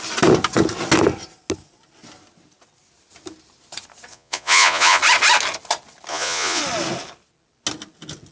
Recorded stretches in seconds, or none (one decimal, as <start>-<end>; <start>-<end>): 0.0-4.1; 5.0-6.1; 6.6-8.3